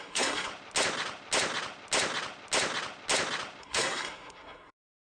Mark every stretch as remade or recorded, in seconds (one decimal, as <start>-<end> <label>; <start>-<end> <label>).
0.0-0.5 remade; 0.5-3.6 recorded; 3.6-5.2 remade